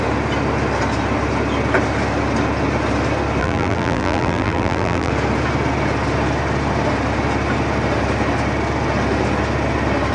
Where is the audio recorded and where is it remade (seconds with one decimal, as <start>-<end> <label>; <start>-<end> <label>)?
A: 0.0-3.4 recorded; 3.4-5.1 remade; 5.1-10.1 recorded